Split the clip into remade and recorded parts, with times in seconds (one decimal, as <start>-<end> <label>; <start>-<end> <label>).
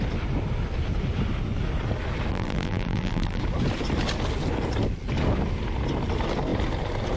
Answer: 0.0-2.3 recorded; 2.3-3.4 remade; 3.4-7.2 recorded